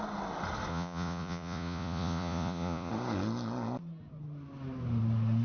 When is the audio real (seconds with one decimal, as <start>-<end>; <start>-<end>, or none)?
0.0-0.7; 2.9-5.4